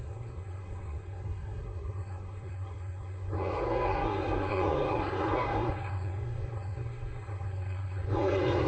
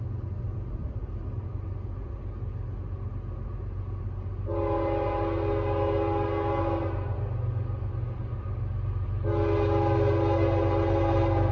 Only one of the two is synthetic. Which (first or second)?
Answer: first